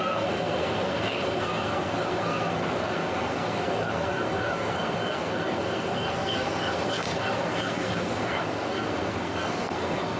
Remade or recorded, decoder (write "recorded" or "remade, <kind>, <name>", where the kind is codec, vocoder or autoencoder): remade, codec, SNAC